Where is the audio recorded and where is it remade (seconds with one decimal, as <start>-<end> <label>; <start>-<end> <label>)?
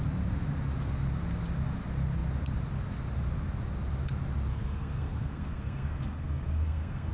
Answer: 0.0-4.5 recorded; 4.5-7.1 remade